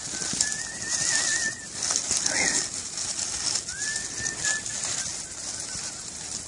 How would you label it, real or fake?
real